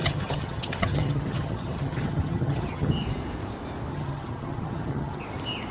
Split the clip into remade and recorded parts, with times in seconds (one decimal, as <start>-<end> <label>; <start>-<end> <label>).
0.0-2.9 remade; 2.9-3.9 recorded; 3.9-5.2 remade; 5.2-5.7 recorded